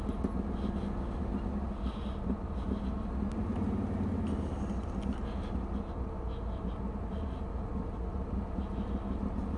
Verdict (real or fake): real